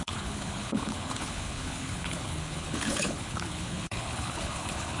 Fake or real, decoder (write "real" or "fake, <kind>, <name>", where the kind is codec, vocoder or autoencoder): fake, codec, HILCodec